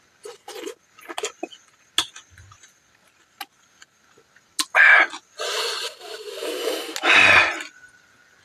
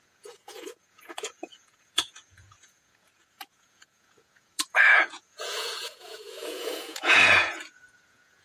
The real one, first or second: first